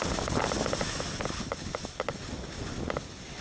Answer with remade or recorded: recorded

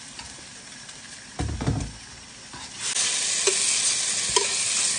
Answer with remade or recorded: recorded